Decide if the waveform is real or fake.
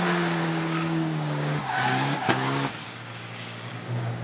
fake